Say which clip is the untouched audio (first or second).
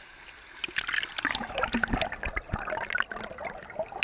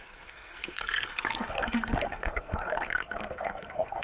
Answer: first